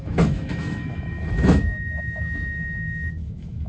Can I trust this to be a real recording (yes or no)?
no